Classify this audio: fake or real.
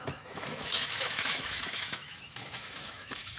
fake